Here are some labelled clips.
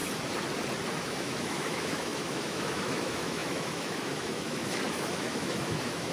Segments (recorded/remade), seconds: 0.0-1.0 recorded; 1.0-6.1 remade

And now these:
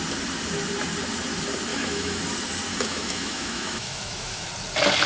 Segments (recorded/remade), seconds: 0.0-1.7 recorded; 1.7-2.2 remade; 2.2-2.7 recorded; 2.7-4.5 remade; 4.5-5.1 recorded

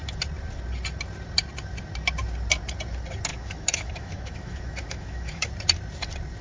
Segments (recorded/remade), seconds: 0.0-3.3 recorded; 3.3-5.5 remade; 5.5-6.4 recorded